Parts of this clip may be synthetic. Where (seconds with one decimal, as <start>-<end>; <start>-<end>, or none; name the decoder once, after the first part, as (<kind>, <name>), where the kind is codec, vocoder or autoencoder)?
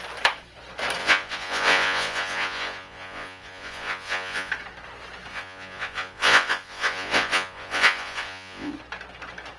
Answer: 1.0-4.5 (vocoder, Vocos); 5.3-8.7